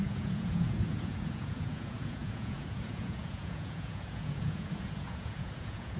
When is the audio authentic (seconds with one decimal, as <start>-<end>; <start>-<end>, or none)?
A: none